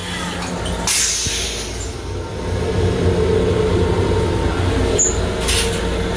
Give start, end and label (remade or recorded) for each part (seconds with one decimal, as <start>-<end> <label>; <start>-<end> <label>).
0.0-6.2 recorded

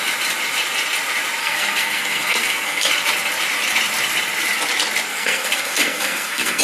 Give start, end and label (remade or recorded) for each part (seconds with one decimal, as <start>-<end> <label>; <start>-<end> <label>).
0.0-1.4 recorded; 1.4-2.9 remade; 2.9-5.1 recorded; 5.1-6.6 remade

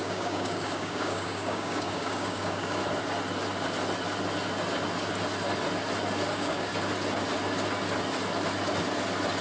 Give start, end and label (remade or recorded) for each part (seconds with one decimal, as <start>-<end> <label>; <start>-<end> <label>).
0.0-2.8 remade; 2.8-6.3 recorded; 6.3-6.7 remade; 6.7-9.4 recorded

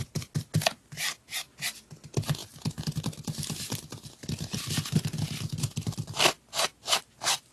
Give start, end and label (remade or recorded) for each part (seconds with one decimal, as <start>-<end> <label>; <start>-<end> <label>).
0.0-7.5 recorded

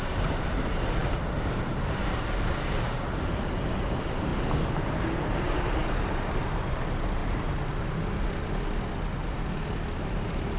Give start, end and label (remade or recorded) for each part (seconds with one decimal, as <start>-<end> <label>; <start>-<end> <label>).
0.0-4.3 remade; 4.3-5.2 recorded; 5.2-7.2 remade; 7.2-10.0 recorded; 10.0-10.6 remade

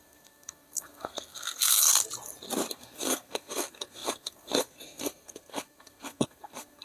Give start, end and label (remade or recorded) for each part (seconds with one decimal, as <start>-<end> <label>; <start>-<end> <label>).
0.0-1.9 remade; 1.9-2.7 recorded; 2.7-6.8 remade

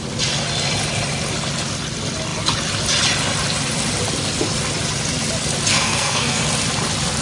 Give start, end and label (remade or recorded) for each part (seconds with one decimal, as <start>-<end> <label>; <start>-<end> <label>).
0.0-5.7 recorded; 5.7-6.4 remade; 6.4-7.2 recorded